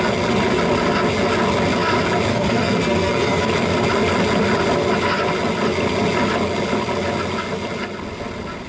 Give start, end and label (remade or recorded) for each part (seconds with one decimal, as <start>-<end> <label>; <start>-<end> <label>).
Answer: 0.0-2.3 recorded; 2.3-3.5 remade; 3.5-8.7 recorded